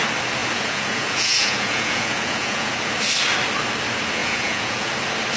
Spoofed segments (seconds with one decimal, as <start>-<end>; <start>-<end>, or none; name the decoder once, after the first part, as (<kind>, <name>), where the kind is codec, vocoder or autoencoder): 0.4-2.7 (vocoder, Vocos); 4.2-4.9